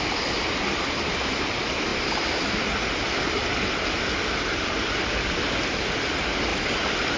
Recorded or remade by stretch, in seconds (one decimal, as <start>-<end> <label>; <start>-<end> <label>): 0.0-7.2 recorded